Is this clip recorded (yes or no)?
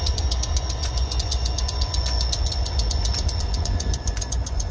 no